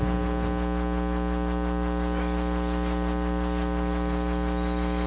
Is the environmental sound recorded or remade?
recorded